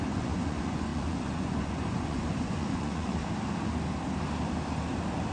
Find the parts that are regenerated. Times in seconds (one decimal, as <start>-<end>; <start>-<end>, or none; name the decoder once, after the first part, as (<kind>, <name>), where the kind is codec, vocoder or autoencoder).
0.0-3.2 (vocoder, Vocos)